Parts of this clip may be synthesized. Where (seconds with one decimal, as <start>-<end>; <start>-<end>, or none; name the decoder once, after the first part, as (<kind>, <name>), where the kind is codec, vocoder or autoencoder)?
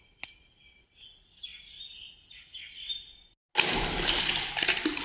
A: none